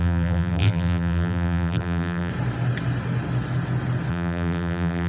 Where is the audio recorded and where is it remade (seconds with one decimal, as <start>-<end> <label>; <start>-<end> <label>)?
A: 0.0-2.3 remade; 2.3-4.1 recorded; 4.1-5.1 remade